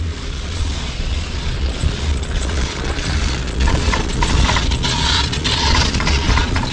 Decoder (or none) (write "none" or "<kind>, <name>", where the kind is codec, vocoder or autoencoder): vocoder, Vocos